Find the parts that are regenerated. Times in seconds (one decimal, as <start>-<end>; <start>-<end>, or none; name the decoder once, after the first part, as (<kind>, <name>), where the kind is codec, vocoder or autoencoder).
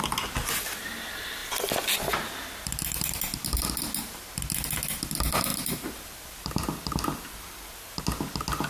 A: 5.5-8.0 (vocoder, BigVGAN v2)